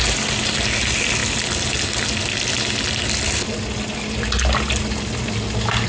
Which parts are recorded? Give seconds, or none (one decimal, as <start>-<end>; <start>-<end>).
0.0-5.9